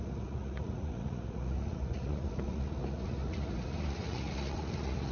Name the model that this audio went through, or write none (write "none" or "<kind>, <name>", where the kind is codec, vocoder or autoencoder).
vocoder, Vocos